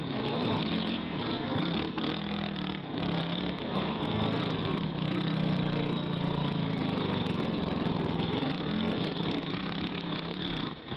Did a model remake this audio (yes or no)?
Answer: yes